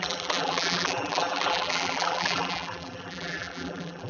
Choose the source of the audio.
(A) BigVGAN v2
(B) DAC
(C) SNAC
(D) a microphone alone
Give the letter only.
A